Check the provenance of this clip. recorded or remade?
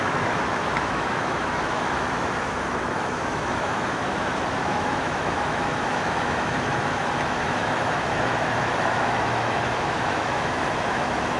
remade